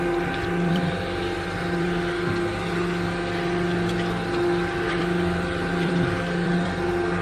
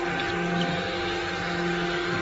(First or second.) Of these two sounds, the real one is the second